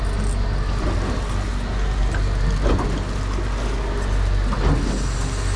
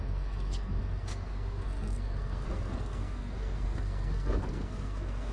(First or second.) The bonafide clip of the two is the first